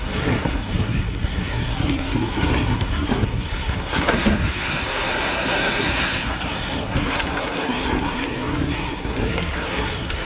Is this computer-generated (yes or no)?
yes